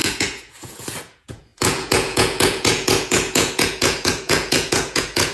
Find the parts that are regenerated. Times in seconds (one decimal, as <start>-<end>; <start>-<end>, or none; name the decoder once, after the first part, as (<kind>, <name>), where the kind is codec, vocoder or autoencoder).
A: 0.0-5.3 (vocoder, Vocos)